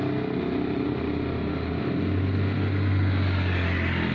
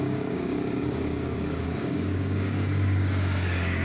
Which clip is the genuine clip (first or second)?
first